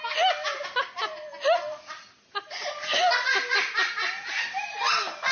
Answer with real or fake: real